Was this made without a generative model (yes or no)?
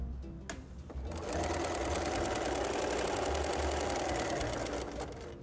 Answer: yes